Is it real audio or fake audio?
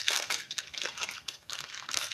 fake